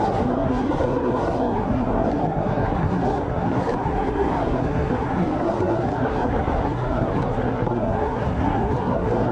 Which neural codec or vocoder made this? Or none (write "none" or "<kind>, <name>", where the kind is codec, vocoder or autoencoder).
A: codec, SNAC